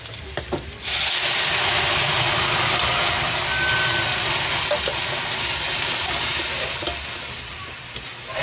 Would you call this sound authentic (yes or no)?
yes